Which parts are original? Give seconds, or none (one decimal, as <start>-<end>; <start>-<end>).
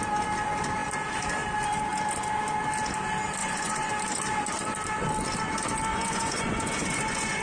0.0-3.4; 3.9-5.9